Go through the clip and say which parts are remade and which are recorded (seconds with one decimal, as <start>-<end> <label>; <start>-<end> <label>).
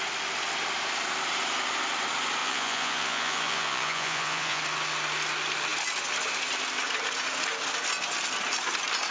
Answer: 0.0-2.4 recorded; 2.4-4.6 remade; 4.6-9.1 recorded